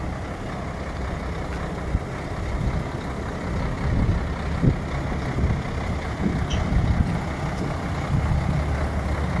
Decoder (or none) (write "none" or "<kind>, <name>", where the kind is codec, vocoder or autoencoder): none